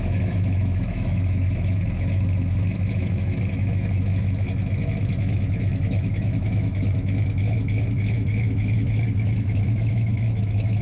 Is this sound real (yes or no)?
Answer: no